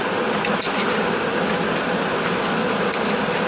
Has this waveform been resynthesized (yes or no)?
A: no